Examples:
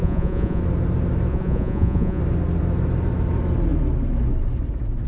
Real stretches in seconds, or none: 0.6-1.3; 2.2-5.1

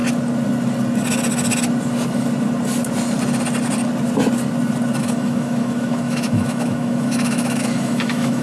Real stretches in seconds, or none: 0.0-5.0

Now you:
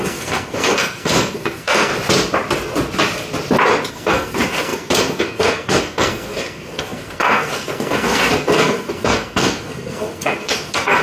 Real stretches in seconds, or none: 1.9-3.9

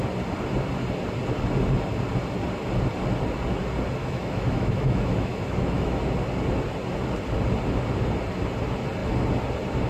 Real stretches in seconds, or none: 0.0-4.0; 6.0-9.9

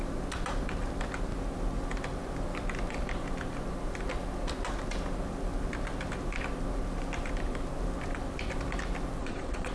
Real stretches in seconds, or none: 0.0-9.2